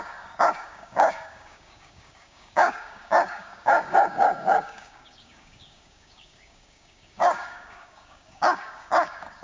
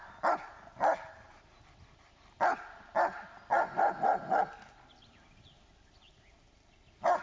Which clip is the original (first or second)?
second